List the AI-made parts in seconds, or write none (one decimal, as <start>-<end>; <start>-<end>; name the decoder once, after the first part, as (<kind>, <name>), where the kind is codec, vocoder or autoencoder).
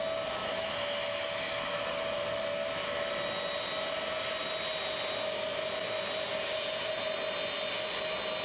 0.4-1.9 (autoencoder, DAC-VAE)